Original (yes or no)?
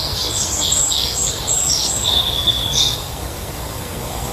no